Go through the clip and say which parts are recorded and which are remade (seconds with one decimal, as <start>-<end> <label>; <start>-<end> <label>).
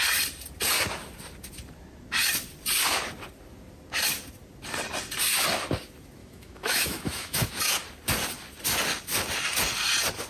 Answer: 0.0-6.2 recorded; 6.2-7.5 remade; 7.5-10.3 recorded